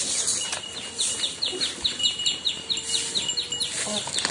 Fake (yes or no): no